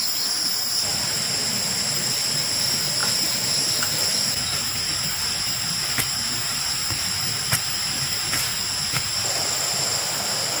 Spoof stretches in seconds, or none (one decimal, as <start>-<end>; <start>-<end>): 0.9-1.5; 3.0-8.1